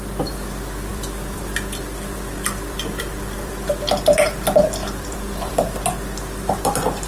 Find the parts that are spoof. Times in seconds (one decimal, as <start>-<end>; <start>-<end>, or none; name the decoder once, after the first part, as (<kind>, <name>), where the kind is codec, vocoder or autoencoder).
0.9-3.7 (vocoder, BigVGAN v2); 4.8-5.8